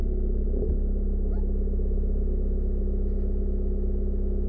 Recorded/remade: recorded